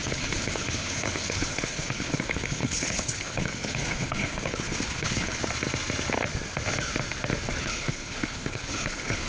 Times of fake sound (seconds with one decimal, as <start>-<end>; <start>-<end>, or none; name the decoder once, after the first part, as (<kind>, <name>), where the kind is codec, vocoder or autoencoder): 0.0-5.4 (codec, HILCodec); 7.6-9.3